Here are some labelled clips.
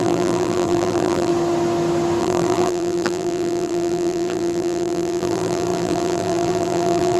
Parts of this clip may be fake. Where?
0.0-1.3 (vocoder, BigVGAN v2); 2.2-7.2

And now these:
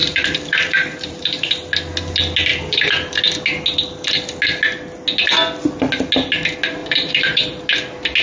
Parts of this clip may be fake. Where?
0.0-1.5 (vocoder, BigVGAN v2); 2.5-3.2; 6.8-7.6